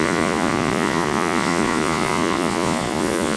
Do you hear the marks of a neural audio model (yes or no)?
yes